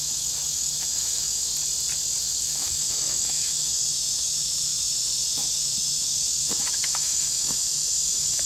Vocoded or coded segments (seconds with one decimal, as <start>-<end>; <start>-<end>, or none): 0.0-1.5; 2.2-8.5